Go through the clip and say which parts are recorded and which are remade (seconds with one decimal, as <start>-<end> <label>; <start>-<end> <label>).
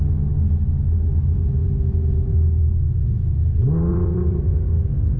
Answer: 0.0-3.9 recorded; 3.9-4.5 remade; 4.5-5.2 recorded